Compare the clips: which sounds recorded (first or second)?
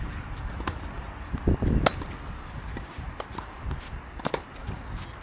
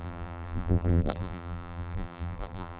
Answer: first